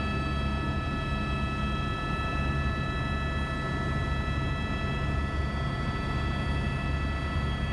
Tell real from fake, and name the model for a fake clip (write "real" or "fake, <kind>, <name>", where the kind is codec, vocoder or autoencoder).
real